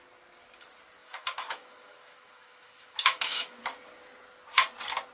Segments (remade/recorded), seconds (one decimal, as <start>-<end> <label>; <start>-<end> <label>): 0.0-1.0 recorded; 1.0-3.6 remade; 3.6-5.1 recorded